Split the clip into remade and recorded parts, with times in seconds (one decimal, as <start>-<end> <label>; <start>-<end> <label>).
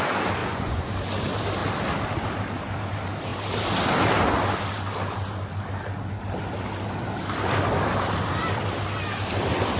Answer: 0.0-0.4 recorded; 0.4-0.9 remade; 0.9-9.8 recorded